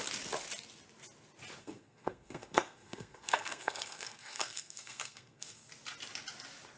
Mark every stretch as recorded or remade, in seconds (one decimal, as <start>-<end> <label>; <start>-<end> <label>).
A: 0.0-1.6 recorded; 1.6-5.7 remade; 5.7-6.8 recorded